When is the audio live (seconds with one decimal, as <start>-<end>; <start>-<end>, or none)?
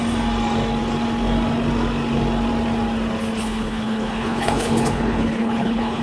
0.0-3.4